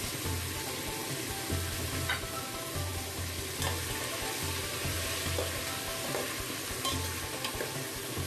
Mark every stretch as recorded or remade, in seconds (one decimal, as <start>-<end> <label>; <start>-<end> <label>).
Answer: 0.0-2.9 recorded; 2.9-5.6 remade; 5.6-8.3 recorded